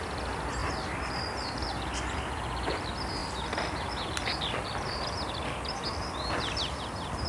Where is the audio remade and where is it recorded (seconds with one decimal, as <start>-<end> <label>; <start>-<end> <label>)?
0.0-7.3 recorded